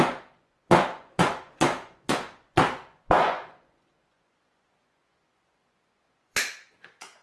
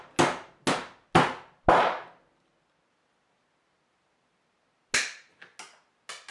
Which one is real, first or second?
second